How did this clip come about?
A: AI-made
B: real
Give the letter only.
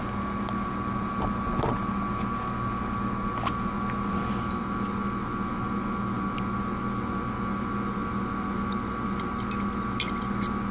B